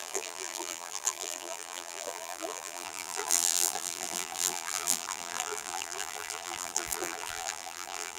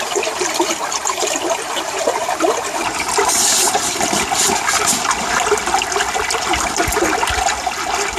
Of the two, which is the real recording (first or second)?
second